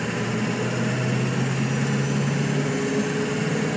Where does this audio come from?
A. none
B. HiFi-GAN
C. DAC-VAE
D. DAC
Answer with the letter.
A